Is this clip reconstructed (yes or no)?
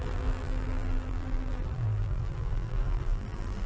yes